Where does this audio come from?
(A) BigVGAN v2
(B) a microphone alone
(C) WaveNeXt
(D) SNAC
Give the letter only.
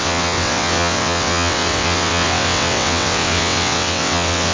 C